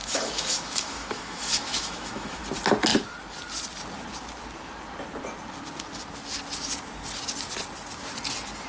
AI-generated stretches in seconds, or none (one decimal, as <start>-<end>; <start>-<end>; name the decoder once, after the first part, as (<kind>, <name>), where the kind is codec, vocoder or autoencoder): 0.0-2.4 (autoencoder, DAC-VAE)